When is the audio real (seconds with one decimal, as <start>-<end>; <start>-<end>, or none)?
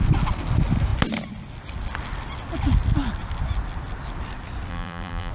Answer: 0.0-4.7